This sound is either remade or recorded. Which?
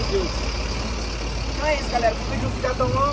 recorded